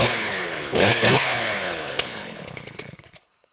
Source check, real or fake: fake